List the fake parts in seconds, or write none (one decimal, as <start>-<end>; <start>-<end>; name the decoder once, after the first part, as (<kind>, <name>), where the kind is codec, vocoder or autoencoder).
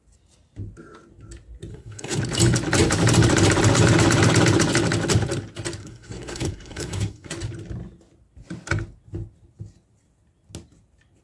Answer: 1.7-2.2 (codec, SNAC); 5.8-7.3